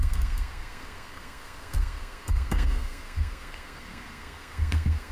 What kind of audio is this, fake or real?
fake